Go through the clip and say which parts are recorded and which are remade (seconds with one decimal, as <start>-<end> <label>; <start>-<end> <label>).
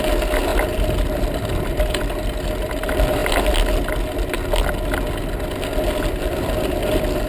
0.0-7.3 recorded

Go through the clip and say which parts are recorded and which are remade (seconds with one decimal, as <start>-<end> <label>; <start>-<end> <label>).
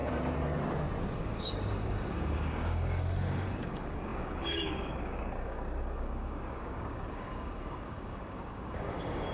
0.0-1.2 recorded; 1.2-9.3 remade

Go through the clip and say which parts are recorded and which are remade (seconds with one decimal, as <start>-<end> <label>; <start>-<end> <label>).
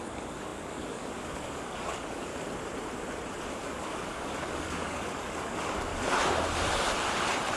0.0-2.3 remade; 2.3-3.5 recorded; 3.5-5.9 remade; 5.9-7.6 recorded